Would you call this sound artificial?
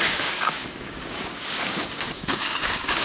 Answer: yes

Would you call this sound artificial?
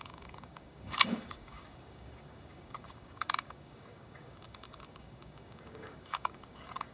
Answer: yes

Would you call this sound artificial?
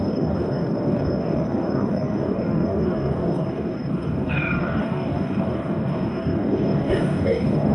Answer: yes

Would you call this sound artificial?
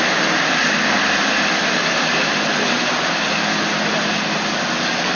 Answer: no